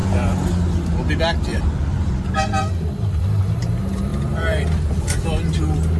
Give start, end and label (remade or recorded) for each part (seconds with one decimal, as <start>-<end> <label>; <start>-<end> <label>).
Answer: 0.0-1.5 recorded; 1.5-3.4 remade; 3.4-4.1 recorded; 4.1-5.4 remade; 5.4-6.0 recorded

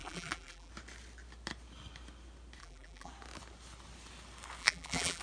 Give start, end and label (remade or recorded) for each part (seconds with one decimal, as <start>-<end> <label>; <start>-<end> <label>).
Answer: 0.0-0.7 remade; 0.7-2.6 recorded; 2.6-3.1 remade; 3.1-4.6 recorded; 4.6-5.2 remade

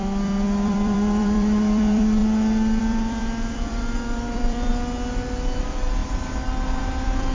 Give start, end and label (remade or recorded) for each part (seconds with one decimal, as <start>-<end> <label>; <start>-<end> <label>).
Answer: 0.0-2.2 remade; 2.2-2.8 recorded; 2.8-4.7 remade; 4.7-5.6 recorded; 5.6-6.0 remade; 6.0-6.8 recorded; 6.8-7.3 remade

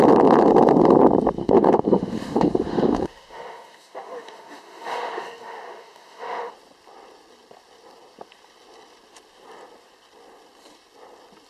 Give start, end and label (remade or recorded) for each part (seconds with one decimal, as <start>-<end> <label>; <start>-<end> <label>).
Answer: 0.0-1.4 recorded; 1.4-6.5 remade; 6.5-11.5 recorded

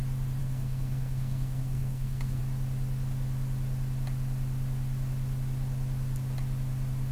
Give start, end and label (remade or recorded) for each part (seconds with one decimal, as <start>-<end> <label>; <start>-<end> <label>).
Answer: 0.0-0.4 recorded; 0.4-2.4 remade; 2.4-7.1 recorded

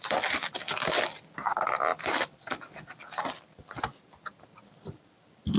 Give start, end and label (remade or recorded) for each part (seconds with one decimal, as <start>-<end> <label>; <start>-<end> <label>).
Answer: 0.0-5.6 recorded

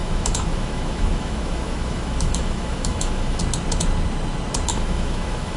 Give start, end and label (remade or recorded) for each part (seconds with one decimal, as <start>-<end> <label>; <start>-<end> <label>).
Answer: 0.0-3.4 remade; 3.4-4.7 recorded; 4.7-5.6 remade

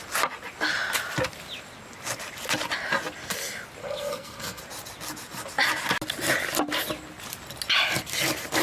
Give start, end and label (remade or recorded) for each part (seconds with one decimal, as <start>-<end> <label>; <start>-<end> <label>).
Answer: 0.0-3.8 recorded; 3.8-4.6 remade; 4.6-8.6 recorded